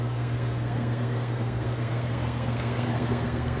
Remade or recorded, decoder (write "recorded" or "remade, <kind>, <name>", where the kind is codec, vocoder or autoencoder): remade, codec, SNAC